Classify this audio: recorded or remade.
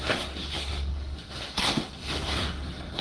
remade